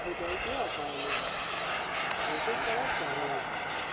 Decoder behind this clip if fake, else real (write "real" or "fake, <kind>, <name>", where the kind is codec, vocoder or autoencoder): real